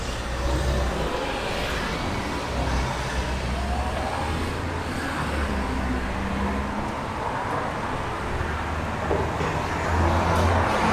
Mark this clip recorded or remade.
recorded